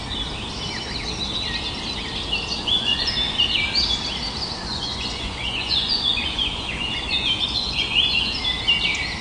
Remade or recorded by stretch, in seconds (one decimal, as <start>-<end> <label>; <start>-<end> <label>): 0.0-2.5 recorded; 2.5-3.1 remade; 3.1-4.6 recorded; 4.6-8.4 remade; 8.4-9.2 recorded